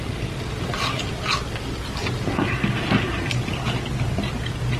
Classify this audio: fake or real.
real